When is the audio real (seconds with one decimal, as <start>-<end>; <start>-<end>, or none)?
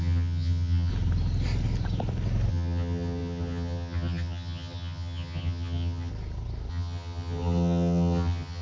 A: 0.9-2.5; 6.1-6.7